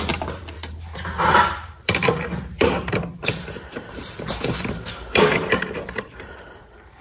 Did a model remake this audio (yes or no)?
yes